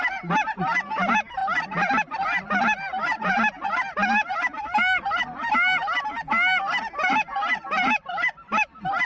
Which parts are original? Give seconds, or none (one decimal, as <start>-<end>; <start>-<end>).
0.0-9.1